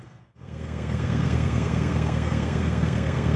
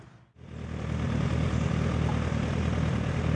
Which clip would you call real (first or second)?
second